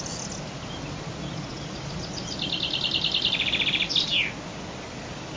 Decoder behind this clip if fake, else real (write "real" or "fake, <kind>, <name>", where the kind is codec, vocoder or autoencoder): real